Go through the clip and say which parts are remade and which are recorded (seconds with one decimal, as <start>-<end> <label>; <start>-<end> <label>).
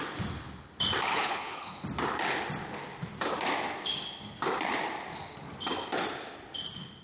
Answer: 0.0-1.1 recorded; 1.1-1.8 remade; 1.8-7.0 recorded